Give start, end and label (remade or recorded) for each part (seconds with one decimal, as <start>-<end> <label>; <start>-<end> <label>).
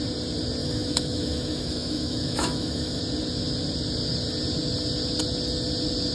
0.0-0.6 recorded; 0.6-3.0 remade; 3.0-6.1 recorded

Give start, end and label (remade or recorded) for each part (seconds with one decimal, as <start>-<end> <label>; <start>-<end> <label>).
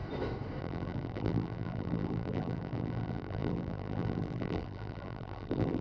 0.0-0.6 recorded; 0.6-5.8 remade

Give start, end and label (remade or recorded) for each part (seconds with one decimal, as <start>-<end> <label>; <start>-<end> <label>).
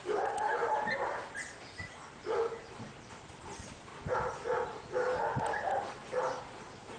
0.0-3.9 remade; 3.9-5.9 recorded; 5.9-7.0 remade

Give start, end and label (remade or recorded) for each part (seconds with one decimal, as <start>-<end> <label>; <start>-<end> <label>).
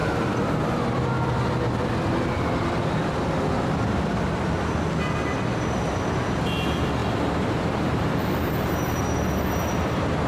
0.0-7.0 recorded; 7.0-9.0 remade; 9.0-10.3 recorded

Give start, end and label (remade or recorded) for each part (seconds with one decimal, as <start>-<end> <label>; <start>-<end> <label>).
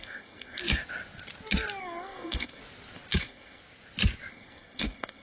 0.0-0.6 remade; 0.6-1.8 recorded; 1.8-2.6 remade; 2.6-3.2 recorded; 3.2-3.6 remade; 3.6-4.3 recorded; 4.3-5.2 remade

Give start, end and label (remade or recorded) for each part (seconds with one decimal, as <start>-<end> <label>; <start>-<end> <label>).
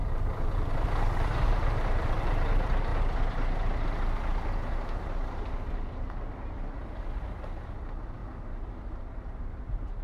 0.0-2.9 remade; 2.9-7.7 recorded; 7.7-8.2 remade; 8.2-9.0 recorded; 9.0-10.0 remade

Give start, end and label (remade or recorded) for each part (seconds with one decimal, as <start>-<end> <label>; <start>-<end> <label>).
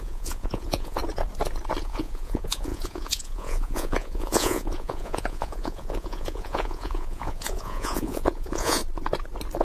0.0-1.0 remade; 1.0-1.8 recorded; 1.8-8.8 remade; 8.8-9.6 recorded